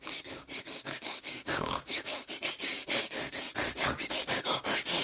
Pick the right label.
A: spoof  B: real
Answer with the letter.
A